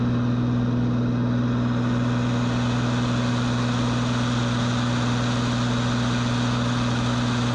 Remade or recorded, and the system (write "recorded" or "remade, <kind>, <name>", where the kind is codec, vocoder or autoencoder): recorded